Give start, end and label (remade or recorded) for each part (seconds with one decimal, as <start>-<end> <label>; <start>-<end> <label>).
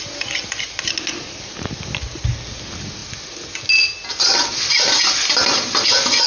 0.0-6.3 recorded